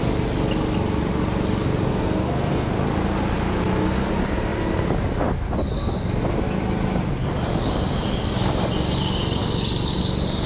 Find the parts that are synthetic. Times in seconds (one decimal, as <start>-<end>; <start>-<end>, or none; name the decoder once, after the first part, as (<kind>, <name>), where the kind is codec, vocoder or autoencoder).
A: 1.9-2.7 (codec, SNAC)